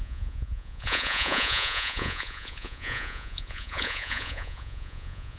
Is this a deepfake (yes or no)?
yes